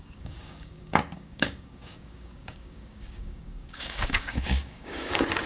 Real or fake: fake